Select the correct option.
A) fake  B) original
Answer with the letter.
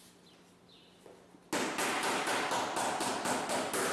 B